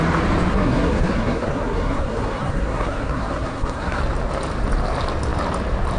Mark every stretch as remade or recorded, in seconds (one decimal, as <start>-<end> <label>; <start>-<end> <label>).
0.0-0.5 recorded; 0.5-4.0 remade; 4.0-6.0 recorded